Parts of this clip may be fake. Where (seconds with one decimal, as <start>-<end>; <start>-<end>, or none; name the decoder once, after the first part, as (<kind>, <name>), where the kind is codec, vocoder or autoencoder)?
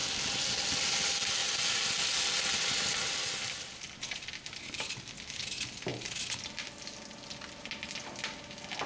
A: none